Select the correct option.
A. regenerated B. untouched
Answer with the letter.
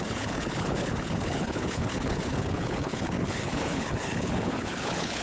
A